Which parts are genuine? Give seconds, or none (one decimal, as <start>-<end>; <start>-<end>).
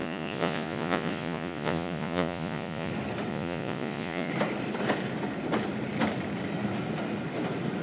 2.9-3.3; 4.3-7.8